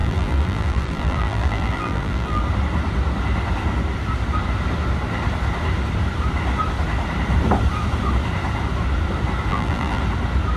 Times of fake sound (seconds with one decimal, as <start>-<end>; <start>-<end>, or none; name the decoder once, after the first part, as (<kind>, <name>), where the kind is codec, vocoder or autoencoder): 0.0-2.4 (vocoder, BigVGAN v2); 9.5-10.0